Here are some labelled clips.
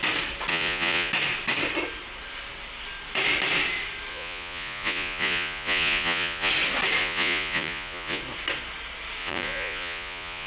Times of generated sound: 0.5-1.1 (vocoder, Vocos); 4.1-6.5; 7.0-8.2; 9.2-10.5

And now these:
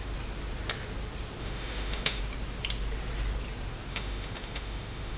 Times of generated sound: 1.4-2.2 (autoencoder, DAC-VAE); 3.9-5.2